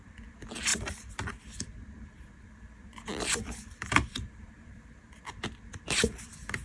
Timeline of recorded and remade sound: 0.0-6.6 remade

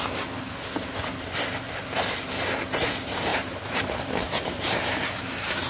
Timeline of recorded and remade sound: 0.0-3.3 recorded; 3.3-5.7 remade